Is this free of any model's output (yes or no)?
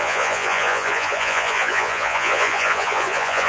no